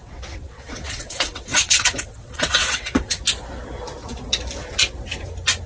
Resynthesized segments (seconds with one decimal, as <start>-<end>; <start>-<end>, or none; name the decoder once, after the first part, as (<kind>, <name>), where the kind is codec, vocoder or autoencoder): 0.0-3.2 (vocoder, WaveNeXt)